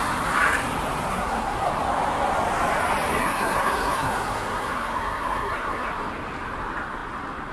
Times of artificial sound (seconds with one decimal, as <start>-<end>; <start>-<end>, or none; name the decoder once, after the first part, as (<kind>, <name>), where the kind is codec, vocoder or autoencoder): 1.1-1.7 (codec, SNAC); 3.2-5.9